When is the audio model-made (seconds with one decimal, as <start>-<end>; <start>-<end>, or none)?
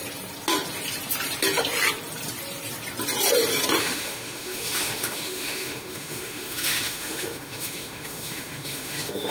3.8-9.3